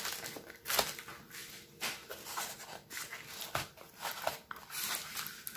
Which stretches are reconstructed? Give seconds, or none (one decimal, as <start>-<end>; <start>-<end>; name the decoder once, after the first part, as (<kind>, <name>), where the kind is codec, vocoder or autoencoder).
none